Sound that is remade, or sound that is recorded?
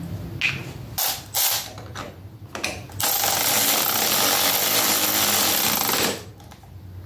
recorded